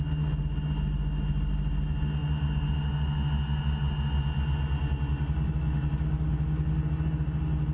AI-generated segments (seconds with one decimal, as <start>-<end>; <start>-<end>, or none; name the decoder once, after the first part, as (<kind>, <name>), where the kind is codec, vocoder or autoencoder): none